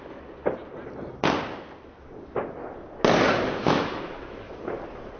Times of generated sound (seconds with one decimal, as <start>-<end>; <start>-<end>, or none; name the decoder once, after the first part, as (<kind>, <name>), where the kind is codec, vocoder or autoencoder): 3.6-4.6 (autoencoder, DAC-VAE)